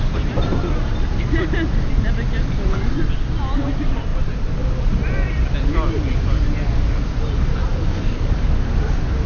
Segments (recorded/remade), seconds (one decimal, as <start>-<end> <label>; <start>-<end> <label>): 0.0-7.7 recorded; 7.7-8.8 remade; 8.8-9.3 recorded